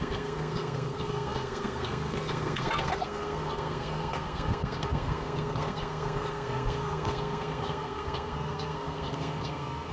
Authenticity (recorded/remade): remade